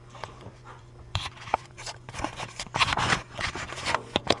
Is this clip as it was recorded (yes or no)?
no